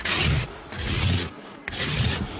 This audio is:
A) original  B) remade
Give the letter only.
B